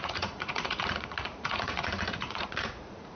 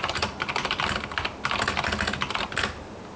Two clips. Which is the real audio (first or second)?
second